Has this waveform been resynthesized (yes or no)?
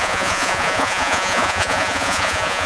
yes